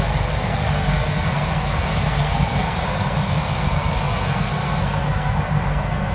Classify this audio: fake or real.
fake